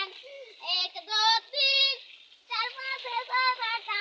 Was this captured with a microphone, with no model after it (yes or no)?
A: yes